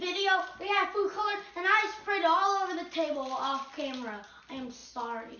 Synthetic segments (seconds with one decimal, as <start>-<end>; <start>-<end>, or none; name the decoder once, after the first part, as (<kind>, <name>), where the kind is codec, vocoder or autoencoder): none